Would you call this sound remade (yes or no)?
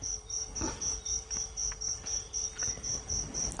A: yes